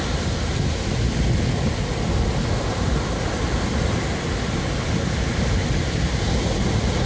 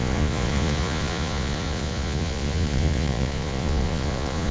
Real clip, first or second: first